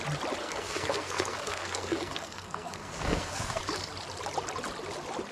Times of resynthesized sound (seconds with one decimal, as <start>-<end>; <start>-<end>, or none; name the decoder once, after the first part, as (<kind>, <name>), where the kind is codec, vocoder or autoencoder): 0.4-3.6 (codec, SNAC)